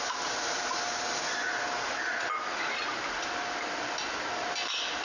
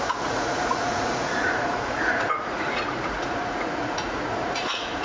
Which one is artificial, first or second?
second